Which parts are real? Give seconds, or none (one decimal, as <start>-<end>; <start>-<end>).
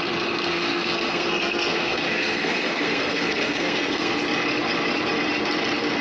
0.0-0.5; 4.1-6.0